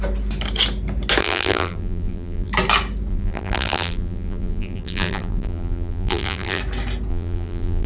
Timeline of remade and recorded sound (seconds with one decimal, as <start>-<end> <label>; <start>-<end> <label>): 0.0-1.2 recorded; 1.2-2.5 remade; 2.5-3.1 recorded; 3.1-6.6 remade; 6.6-7.1 recorded; 7.1-7.9 remade

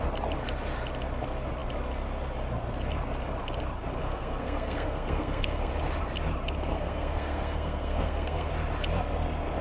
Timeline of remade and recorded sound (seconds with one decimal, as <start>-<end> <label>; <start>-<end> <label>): 0.0-4.0 recorded; 4.0-5.7 remade; 5.7-6.7 recorded; 6.7-8.5 remade; 8.5-9.6 recorded

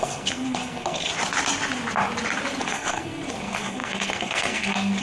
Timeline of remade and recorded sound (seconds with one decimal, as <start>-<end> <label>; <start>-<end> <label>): 0.0-1.1 remade; 1.1-2.6 recorded; 2.6-5.0 remade